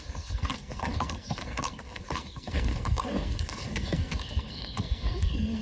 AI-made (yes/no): yes